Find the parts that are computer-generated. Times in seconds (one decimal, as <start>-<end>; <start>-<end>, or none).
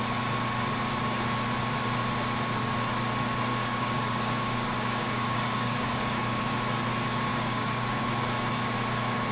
3.5-6.4; 7.3-8.0